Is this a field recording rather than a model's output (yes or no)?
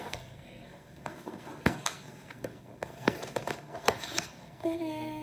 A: no